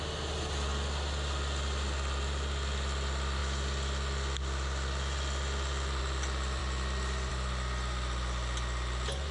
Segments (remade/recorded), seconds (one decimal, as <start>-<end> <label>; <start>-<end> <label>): 0.0-9.3 recorded

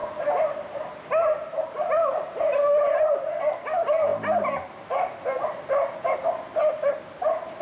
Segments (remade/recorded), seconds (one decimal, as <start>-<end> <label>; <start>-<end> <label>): 0.0-7.6 recorded

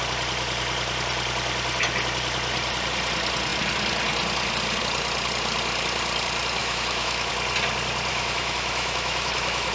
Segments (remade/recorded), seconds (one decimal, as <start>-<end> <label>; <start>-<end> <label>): 0.0-6.6 recorded; 6.6-7.3 remade; 7.3-8.1 recorded; 8.1-9.7 remade

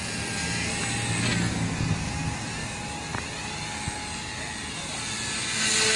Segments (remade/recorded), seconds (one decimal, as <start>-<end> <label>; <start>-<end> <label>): 0.0-6.0 recorded

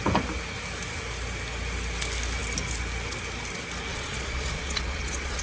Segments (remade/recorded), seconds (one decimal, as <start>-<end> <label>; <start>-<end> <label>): 0.0-3.9 recorded; 3.9-5.4 remade

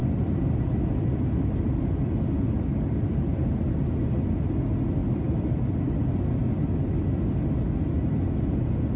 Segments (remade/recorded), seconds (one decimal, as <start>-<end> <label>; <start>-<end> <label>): 0.0-3.1 remade; 3.1-5.0 recorded; 5.0-5.9 remade; 5.9-9.0 recorded